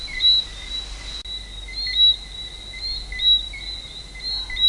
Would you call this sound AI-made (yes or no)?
no